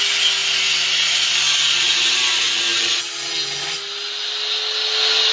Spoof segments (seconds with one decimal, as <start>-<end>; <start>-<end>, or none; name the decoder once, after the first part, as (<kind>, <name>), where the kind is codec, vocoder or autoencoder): none